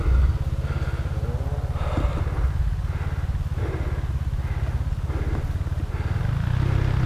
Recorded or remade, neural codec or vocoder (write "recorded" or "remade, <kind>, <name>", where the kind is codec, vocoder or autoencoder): recorded